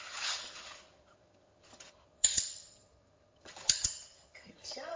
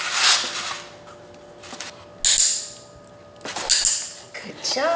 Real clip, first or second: second